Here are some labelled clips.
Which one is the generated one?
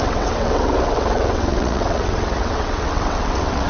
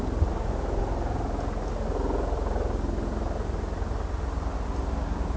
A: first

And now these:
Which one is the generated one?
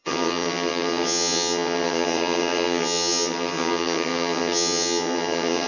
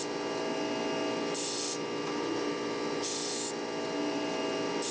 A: first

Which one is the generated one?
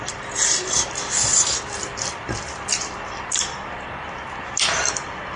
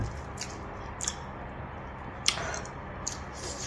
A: first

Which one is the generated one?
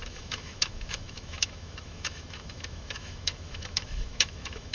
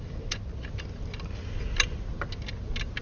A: first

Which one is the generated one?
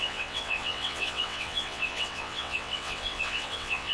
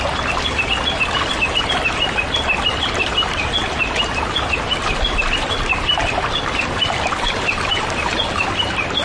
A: first